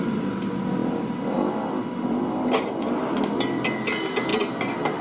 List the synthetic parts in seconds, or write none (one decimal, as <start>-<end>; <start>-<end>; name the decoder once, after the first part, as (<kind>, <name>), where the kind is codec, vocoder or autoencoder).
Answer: none